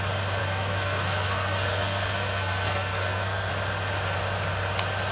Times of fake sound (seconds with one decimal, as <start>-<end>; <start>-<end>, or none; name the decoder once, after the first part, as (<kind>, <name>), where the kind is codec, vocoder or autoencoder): 0.4-3.5 (codec, SNAC)